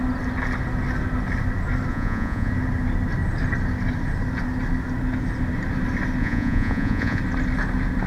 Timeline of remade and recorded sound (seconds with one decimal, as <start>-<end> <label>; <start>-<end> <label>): 0.0-1.9 recorded; 1.9-2.5 remade; 2.5-6.2 recorded; 6.2-7.2 remade; 7.2-8.1 recorded